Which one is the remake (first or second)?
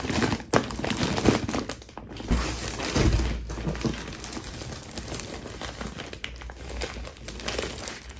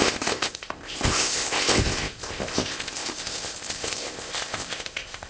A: second